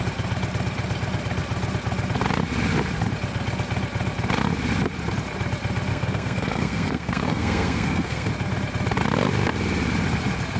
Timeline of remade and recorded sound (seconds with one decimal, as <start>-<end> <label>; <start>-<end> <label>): 0.0-5.9 recorded; 5.9-8.3 remade; 8.3-10.6 recorded